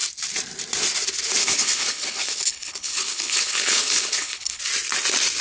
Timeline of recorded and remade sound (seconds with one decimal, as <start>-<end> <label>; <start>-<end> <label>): 0.0-1.4 recorded; 1.4-4.6 remade; 4.6-5.4 recorded